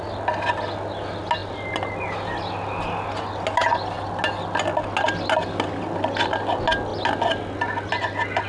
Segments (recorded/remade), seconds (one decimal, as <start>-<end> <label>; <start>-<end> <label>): 0.0-8.5 recorded